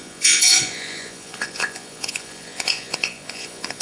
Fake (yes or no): yes